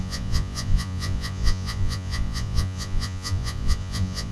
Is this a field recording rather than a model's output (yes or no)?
no